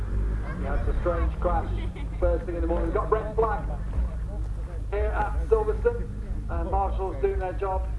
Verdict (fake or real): real